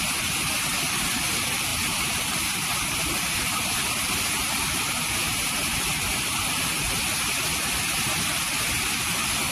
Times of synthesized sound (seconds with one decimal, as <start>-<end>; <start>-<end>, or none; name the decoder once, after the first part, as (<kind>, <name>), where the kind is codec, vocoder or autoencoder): 1.7-6.9 (vocoder, BigVGAN v2)